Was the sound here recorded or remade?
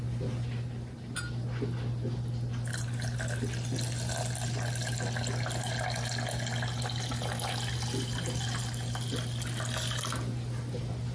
recorded